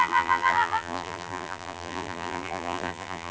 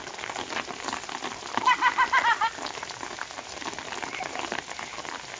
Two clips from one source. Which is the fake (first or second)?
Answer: first